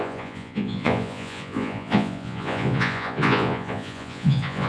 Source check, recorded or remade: remade